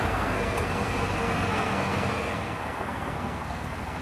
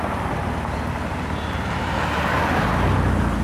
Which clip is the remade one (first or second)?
first